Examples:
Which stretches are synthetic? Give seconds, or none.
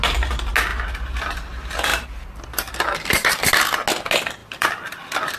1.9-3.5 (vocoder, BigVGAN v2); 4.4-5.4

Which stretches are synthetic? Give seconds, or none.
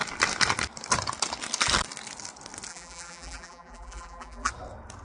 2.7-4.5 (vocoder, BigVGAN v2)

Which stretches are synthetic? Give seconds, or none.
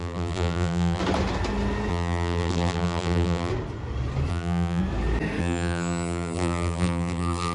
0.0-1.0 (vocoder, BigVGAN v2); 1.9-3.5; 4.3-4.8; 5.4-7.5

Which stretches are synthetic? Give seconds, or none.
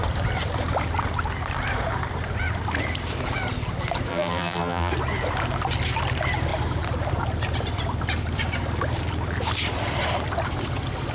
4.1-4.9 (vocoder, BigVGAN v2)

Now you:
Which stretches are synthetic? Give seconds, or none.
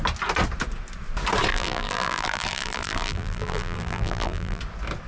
1.5-4.6 (vocoder, BigVGAN v2)